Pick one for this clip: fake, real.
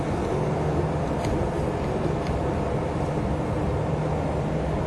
real